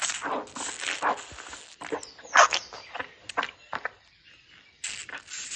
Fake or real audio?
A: real